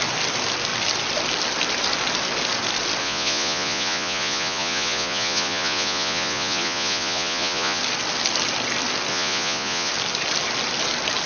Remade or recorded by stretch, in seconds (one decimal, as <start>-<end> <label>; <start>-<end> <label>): 0.0-3.0 recorded; 3.0-7.8 remade; 7.8-9.1 recorded; 9.1-9.9 remade; 9.9-11.3 recorded